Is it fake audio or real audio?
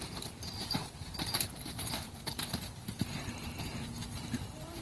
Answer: fake